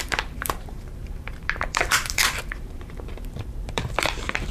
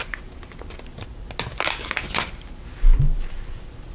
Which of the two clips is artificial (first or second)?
first